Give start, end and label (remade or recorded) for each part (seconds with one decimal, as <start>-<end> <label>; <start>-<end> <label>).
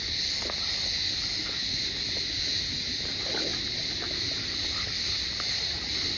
0.0-1.6 recorded; 1.6-2.4 remade; 2.4-3.5 recorded; 3.5-4.4 remade; 4.4-6.2 recorded